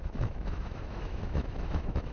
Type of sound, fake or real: fake